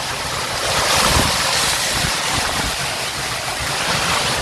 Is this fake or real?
real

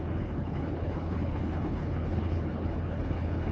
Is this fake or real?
fake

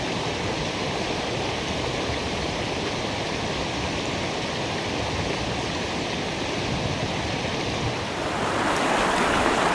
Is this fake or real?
real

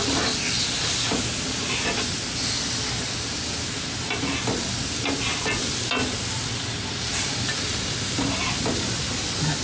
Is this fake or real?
real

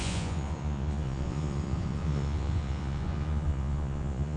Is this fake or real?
fake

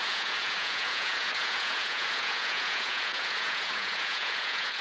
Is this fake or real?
fake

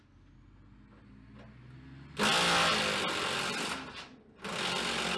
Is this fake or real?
real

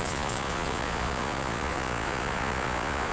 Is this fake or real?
fake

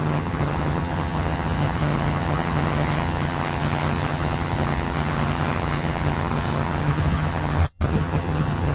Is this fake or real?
fake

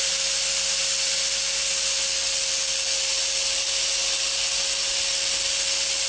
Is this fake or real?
real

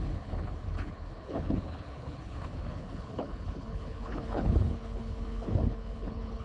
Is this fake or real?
fake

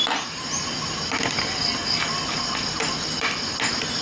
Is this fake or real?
real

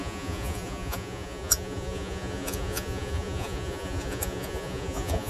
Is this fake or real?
fake